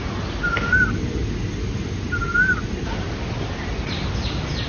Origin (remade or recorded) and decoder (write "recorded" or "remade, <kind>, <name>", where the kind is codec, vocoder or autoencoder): recorded